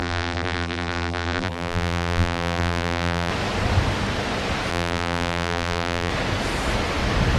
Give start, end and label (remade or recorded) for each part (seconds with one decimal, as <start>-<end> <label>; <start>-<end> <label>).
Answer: 0.0-3.3 remade; 3.3-4.7 recorded; 4.7-6.1 remade; 6.1-7.4 recorded